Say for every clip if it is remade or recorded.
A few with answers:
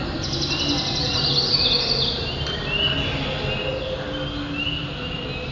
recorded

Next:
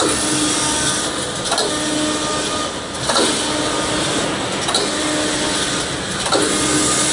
recorded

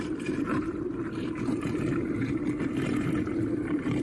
remade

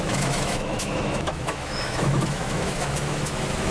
remade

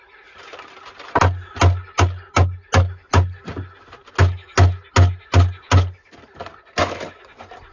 recorded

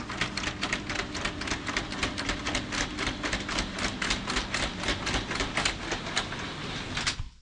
recorded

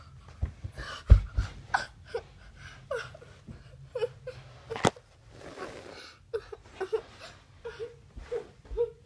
recorded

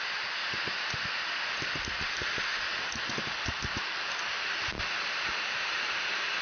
recorded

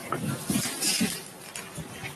recorded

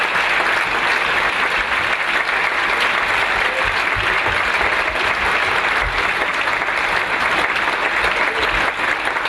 recorded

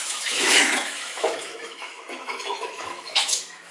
remade